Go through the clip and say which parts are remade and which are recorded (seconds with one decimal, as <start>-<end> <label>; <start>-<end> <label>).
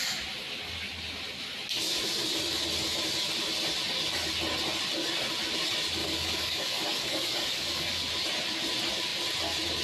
0.0-6.0 recorded; 6.0-8.0 remade; 8.0-9.8 recorded